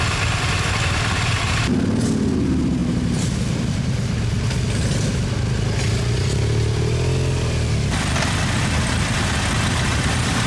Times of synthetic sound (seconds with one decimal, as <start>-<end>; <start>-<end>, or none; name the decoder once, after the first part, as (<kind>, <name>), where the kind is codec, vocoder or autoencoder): none

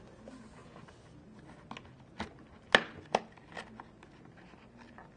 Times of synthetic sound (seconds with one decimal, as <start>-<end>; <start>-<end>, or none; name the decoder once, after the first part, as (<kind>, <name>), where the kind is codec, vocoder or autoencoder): none

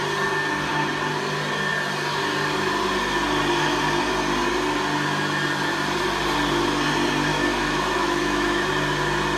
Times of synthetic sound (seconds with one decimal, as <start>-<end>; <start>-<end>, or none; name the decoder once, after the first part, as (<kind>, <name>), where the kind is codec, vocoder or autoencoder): 7.3-8.7 (autoencoder, DAC-VAE)

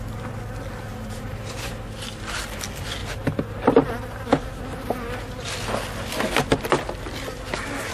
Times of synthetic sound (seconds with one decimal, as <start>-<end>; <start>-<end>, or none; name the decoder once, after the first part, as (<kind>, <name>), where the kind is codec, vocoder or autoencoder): 0.9-1.7 (vocoder, BigVGAN v2)

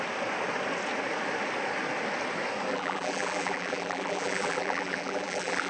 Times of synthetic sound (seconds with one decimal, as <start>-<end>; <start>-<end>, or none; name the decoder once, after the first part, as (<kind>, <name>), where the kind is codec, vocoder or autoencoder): 2.7-5.7 (vocoder, BigVGAN v2)